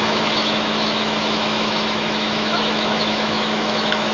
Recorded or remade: remade